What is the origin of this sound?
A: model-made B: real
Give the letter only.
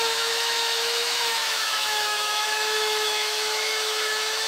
A